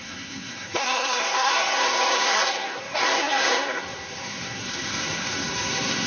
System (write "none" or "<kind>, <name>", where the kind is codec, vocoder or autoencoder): codec, SNAC